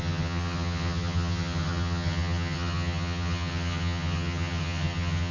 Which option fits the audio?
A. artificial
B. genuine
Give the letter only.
A